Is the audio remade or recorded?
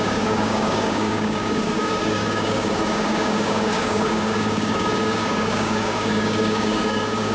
remade